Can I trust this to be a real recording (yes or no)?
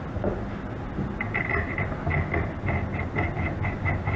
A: yes